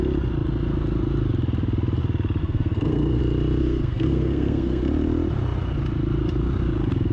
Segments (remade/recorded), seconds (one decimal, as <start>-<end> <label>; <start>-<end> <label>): 0.0-2.4 recorded; 2.4-3.2 remade; 3.2-3.6 recorded; 3.6-4.8 remade; 4.8-7.1 recorded